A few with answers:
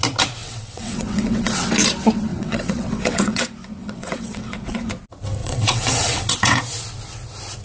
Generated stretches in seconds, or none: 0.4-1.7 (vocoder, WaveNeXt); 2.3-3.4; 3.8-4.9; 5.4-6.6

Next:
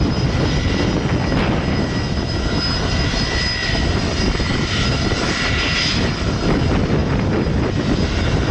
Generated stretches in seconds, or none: none